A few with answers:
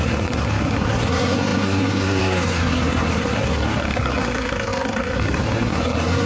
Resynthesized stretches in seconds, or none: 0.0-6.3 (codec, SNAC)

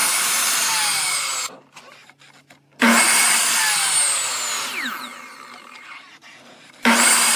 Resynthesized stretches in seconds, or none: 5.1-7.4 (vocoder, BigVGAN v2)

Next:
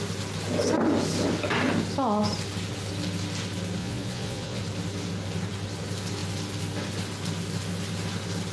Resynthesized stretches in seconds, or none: 3.8-4.6 (vocoder, Vocos)